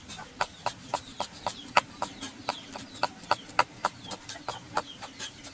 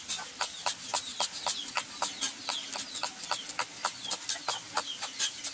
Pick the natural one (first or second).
second